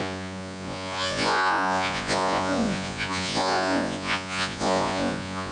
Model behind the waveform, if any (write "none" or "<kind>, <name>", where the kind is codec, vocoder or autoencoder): vocoder, Vocos